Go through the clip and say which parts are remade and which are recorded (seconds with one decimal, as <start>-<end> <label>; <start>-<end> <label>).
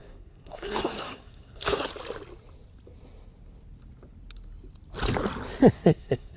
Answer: 0.0-1.9 remade; 1.9-5.7 recorded; 5.7-6.4 remade